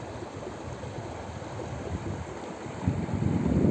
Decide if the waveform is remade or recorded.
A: recorded